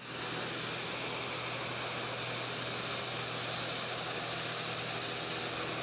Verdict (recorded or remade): recorded